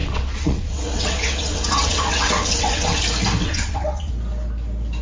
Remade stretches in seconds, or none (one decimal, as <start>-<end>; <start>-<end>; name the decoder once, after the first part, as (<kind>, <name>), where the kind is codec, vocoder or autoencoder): 0.0-3.0 (vocoder, WaveNeXt); 3.4-4.1